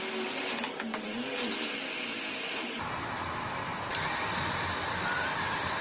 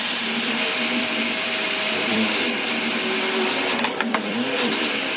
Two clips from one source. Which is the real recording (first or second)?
first